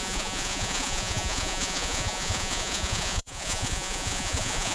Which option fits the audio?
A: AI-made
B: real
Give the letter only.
A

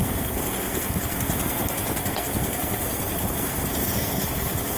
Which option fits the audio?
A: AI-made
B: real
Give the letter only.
A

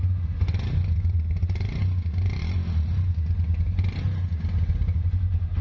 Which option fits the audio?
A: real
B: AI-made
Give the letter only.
A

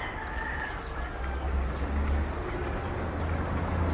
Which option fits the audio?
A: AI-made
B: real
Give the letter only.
B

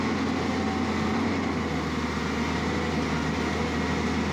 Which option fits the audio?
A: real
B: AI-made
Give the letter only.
A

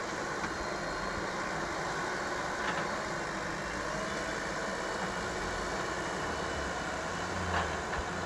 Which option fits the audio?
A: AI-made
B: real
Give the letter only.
B